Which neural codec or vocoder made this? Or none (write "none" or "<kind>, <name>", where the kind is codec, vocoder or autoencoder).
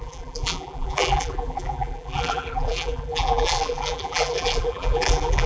vocoder, BigVGAN v2